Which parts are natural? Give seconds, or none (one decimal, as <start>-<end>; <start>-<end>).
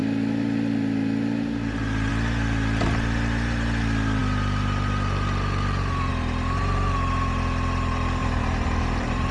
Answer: 0.0-4.2; 6.1-8.2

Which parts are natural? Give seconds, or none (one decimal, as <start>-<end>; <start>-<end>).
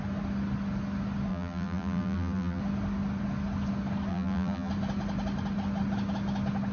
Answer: 0.0-1.3; 2.6-4.1; 4.7-6.7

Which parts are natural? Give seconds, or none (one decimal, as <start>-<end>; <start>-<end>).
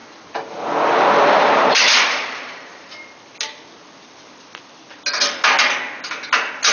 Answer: 0.0-1.3; 2.7-6.7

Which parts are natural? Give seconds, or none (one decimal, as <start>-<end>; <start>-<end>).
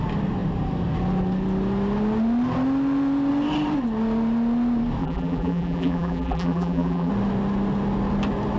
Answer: 0.0-5.0; 7.1-8.6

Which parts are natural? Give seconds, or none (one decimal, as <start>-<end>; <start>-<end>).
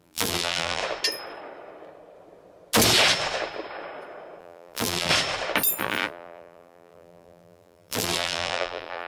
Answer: 0.8-4.4; 5.1-5.8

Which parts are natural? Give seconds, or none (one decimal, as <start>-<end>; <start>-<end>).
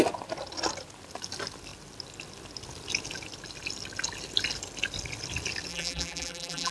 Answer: 0.0-5.7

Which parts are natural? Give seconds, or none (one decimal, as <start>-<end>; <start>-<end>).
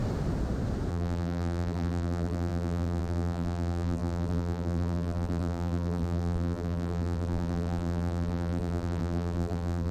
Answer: 0.0-0.9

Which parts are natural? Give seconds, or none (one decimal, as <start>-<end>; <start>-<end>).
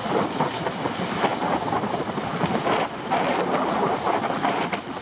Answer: 0.0-1.3; 3.5-5.0